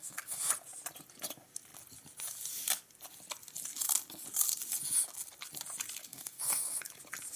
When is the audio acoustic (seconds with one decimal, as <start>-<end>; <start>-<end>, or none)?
0.5-6.1; 6.8-7.4